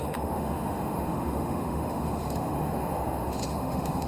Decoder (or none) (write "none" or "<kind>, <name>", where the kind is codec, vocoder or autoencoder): autoencoder, DAC-VAE